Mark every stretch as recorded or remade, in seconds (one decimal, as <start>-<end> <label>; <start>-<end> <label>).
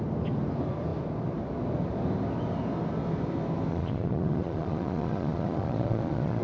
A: 0.0-3.7 recorded; 3.7-6.4 remade